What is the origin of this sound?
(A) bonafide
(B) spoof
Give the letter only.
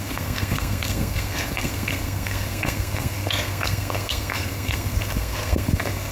B